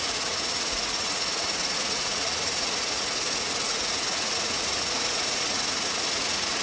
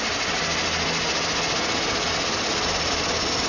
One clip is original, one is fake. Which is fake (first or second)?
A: first